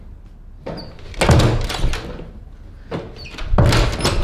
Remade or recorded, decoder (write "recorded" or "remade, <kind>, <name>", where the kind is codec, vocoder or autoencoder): recorded